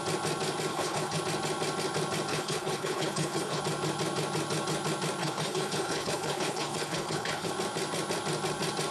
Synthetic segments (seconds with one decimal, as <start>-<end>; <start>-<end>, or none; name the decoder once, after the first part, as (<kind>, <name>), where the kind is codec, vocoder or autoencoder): 0.7-1.2 (codec, HILCodec); 2.3-3.6; 5.2-7.5